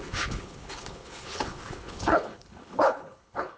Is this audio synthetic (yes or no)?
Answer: yes